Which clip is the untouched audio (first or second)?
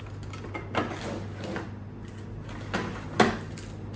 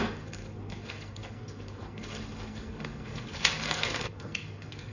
first